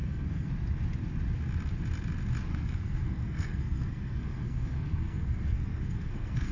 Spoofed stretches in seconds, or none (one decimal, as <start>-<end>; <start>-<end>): 0.0-0.5; 2.5-6.5